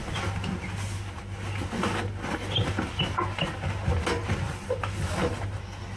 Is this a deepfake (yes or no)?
no